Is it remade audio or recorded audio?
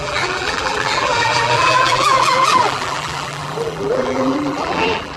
remade